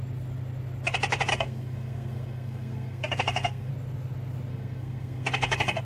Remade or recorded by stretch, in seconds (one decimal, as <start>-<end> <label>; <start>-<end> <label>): 0.0-1.3 recorded; 1.3-3.7 remade; 3.7-4.5 recorded; 4.5-5.8 remade